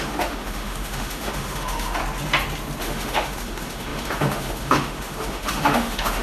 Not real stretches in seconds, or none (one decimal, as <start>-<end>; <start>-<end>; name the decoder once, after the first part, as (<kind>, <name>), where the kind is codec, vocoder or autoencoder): 0.0-2.0 (autoencoder, DAC-VAE); 2.8-6.2